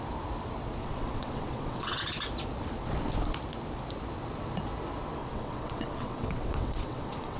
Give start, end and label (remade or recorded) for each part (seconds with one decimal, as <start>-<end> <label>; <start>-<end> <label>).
0.0-0.8 recorded; 0.8-2.0 remade; 2.0-5.2 recorded; 5.2-7.4 remade

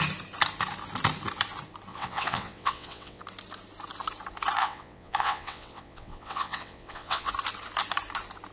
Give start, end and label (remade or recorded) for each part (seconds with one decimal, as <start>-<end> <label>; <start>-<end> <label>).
0.0-1.9 recorded; 1.9-3.2 remade; 3.2-4.6 recorded; 4.6-7.3 remade; 7.3-8.5 recorded

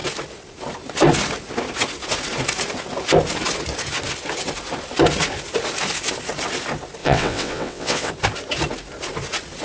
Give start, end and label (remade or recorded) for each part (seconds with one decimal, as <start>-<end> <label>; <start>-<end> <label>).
0.0-7.0 recorded; 7.0-8.1 remade; 8.1-9.6 recorded

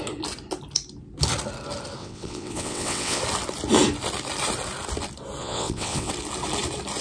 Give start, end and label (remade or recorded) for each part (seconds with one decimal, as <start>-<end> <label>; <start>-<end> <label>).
0.0-2.0 recorded; 2.0-3.2 remade; 3.2-5.4 recorded; 5.4-6.1 remade; 6.1-7.0 recorded

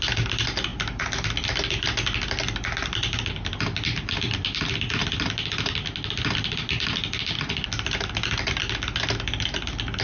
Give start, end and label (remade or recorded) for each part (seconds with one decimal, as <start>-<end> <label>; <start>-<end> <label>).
0.0-10.0 recorded

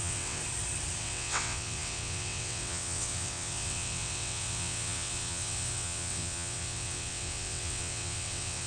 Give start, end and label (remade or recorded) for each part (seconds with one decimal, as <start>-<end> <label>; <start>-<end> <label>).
0.0-0.4 remade; 0.4-1.0 recorded; 1.0-8.7 remade